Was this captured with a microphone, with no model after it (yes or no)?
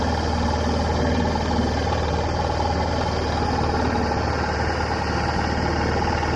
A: yes